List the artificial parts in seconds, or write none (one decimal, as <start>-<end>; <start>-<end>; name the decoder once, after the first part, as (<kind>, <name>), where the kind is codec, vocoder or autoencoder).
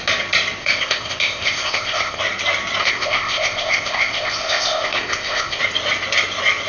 0.6-2.2 (codec, ZipCodec); 2.8-5.6